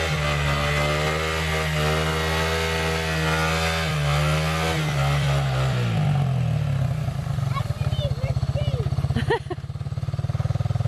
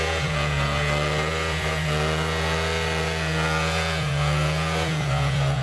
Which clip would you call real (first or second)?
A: first